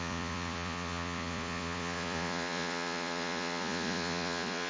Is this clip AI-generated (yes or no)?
yes